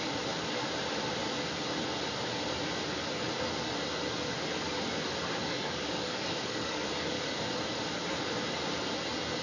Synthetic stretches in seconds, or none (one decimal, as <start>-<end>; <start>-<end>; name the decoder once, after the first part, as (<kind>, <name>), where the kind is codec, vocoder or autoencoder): 5.4-7.3 (codec, DAC)